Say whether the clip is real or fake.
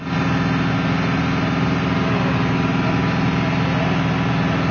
real